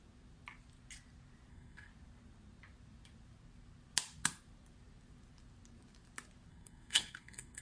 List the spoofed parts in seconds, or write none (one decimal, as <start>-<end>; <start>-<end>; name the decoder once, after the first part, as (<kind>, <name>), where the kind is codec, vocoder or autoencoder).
1.5-1.9 (codec, SNAC); 6.5-7.6